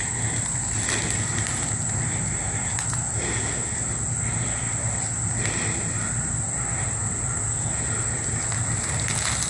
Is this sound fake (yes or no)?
no